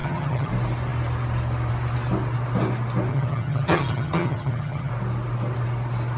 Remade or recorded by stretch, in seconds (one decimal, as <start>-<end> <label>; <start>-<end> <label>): 0.0-0.5 remade; 0.5-3.1 recorded; 3.1-4.9 remade; 4.9-6.2 recorded